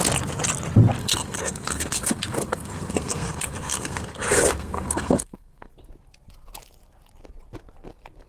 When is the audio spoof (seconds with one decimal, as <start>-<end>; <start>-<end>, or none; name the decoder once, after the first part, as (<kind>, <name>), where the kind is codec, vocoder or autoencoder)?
1.0-5.7 (codec, SNAC)